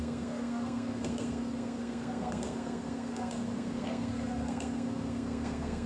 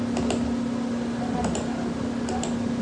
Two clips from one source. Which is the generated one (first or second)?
first